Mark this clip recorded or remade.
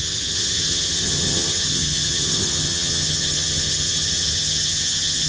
remade